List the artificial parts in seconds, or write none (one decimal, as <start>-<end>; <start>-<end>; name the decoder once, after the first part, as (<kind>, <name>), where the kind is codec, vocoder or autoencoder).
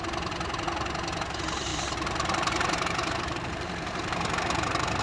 1.7-5.0 (vocoder, BigVGAN v2)